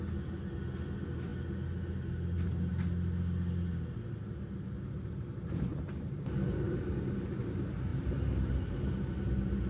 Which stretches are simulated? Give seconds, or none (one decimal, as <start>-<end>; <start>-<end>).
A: 5.7-7.0; 7.9-8.5